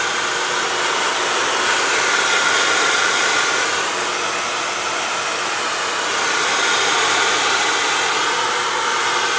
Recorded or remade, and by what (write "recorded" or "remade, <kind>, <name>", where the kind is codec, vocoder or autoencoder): recorded